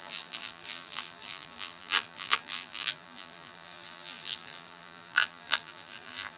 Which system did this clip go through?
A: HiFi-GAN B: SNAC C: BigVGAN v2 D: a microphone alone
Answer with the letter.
C